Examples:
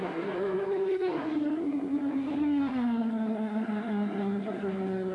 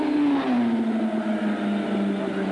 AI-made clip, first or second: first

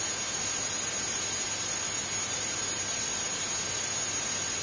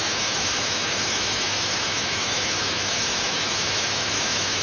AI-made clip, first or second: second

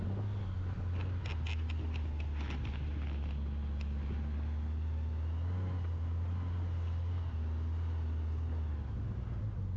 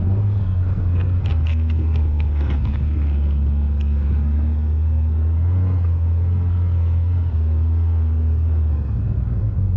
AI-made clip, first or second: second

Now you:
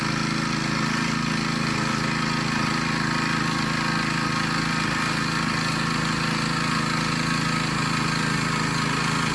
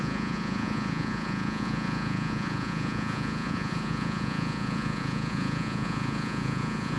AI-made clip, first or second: second